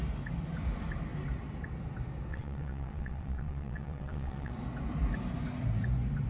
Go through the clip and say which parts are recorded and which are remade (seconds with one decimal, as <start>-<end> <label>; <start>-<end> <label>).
0.0-2.3 recorded; 2.3-4.5 remade; 4.5-6.3 recorded